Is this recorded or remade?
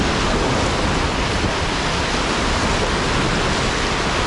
recorded